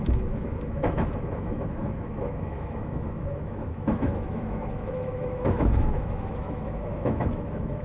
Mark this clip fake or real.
fake